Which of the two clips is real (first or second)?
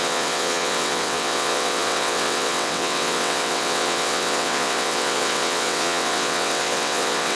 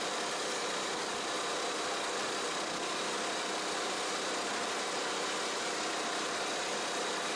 second